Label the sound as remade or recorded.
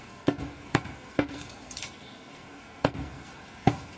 remade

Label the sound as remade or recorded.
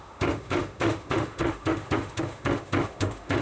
remade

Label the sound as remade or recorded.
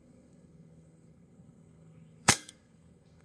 remade